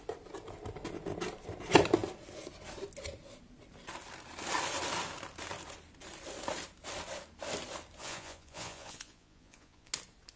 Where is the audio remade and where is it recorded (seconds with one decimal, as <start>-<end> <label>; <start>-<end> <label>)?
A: 0.0-8.0 recorded; 8.0-9.9 remade; 9.9-10.4 recorded